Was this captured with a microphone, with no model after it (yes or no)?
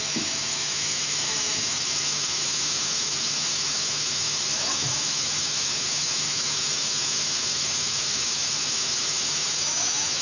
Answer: no